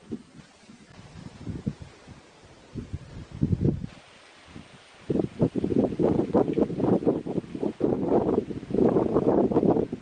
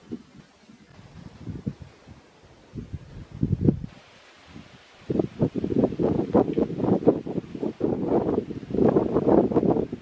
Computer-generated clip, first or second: first